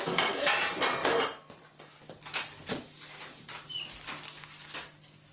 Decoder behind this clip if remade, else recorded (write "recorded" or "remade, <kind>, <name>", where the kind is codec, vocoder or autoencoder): recorded